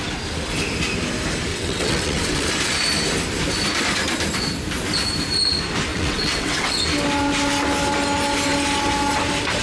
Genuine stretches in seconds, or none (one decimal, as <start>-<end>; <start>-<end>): 0.0-1.5; 2.5-5.9; 6.8-9.6